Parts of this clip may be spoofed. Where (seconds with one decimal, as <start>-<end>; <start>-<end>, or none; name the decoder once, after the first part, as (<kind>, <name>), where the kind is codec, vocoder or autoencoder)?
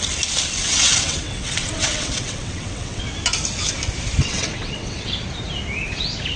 0.6-3.0 (vocoder, WaveNeXt); 4.2-5.1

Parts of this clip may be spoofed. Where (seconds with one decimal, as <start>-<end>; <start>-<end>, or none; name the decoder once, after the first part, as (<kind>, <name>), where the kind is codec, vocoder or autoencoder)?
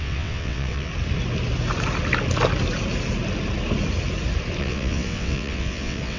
0.0-0.9 (vocoder, WaveNeXt); 4.6-6.2